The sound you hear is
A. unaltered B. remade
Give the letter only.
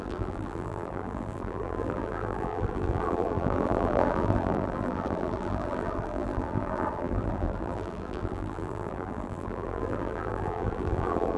B